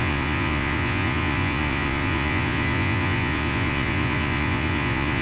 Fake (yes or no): yes